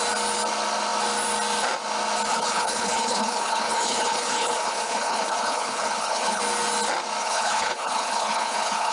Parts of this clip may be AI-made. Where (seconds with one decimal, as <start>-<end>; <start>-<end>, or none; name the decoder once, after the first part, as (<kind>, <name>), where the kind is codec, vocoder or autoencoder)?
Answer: 2.3-6.4 (codec, HILCodec); 7.2-8.9